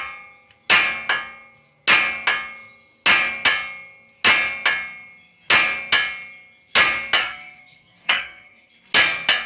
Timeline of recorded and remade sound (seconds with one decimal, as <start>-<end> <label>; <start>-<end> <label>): 0.0-7.2 recorded; 7.2-8.7 remade; 8.7-9.5 recorded